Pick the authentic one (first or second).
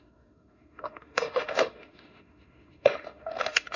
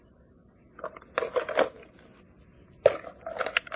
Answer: second